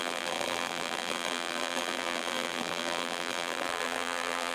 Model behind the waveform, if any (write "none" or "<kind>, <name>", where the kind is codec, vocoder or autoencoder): vocoder, BigVGAN v2